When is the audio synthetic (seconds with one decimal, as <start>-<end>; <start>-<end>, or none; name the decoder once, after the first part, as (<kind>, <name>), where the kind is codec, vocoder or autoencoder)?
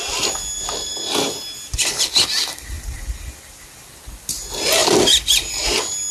none